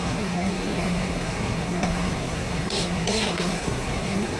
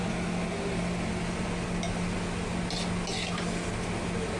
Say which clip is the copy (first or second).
first